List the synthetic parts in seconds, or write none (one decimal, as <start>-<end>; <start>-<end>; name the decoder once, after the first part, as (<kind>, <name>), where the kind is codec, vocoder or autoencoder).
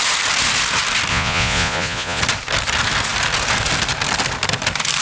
1.1-2.2 (vocoder, Vocos)